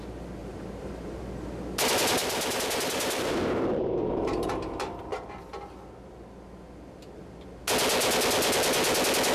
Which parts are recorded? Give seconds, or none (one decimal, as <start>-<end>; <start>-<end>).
0.0-0.4; 1.2-2.2; 4.5-9.3